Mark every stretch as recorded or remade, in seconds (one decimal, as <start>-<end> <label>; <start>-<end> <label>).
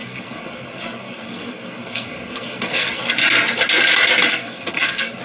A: 0.0-3.1 remade; 3.1-4.3 recorded; 4.3-5.2 remade